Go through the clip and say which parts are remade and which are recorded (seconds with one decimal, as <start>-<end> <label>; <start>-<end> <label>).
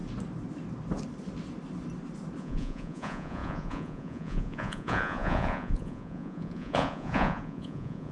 0.0-2.4 recorded; 2.4-8.1 remade